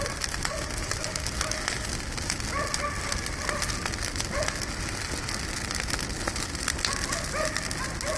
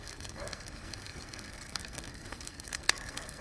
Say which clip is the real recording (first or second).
first